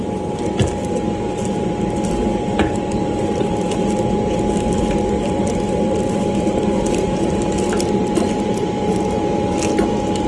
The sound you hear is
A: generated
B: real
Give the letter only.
B